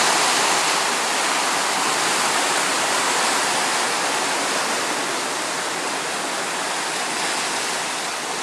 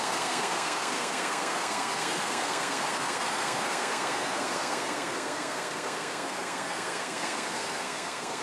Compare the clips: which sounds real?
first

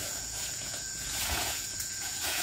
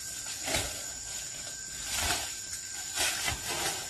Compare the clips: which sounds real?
second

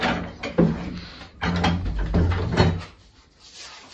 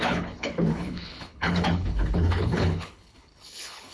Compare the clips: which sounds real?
first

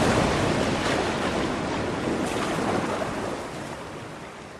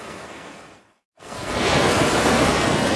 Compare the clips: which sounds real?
first